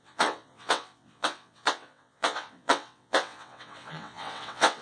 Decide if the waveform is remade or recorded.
remade